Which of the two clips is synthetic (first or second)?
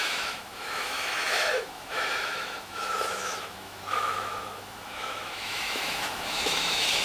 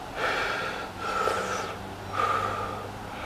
first